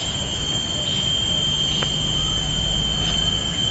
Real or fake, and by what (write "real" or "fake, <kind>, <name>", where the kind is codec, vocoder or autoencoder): fake, vocoder, Vocos